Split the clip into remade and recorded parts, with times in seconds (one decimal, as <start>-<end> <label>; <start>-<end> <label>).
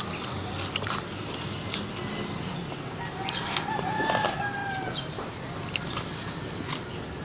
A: 0.0-4.6 recorded; 4.6-5.5 remade; 5.5-7.2 recorded